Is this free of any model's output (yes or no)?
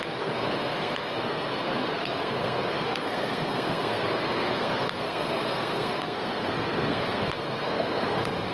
no